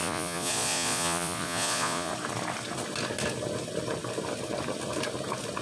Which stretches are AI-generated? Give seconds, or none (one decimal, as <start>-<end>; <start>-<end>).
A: 0.0-2.1